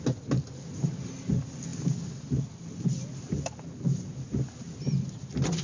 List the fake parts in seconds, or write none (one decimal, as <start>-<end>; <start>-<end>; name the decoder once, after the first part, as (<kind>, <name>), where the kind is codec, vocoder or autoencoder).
none